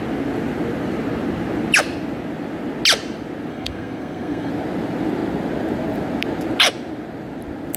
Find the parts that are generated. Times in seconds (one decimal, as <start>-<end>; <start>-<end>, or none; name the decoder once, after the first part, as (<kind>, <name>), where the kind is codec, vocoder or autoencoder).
3.5-4.5 (codec, SNAC)